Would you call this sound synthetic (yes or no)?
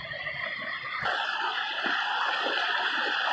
no